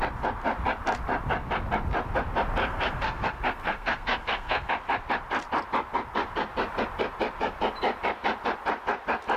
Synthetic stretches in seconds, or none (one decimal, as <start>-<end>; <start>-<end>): 2.6-4.7